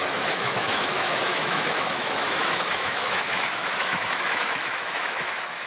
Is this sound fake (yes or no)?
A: yes